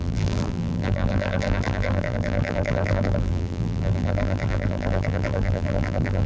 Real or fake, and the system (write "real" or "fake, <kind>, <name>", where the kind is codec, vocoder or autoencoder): fake, vocoder, BigVGAN v2